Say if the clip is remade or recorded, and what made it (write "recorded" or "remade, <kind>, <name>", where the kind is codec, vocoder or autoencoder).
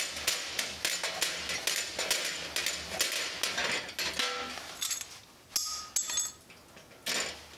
recorded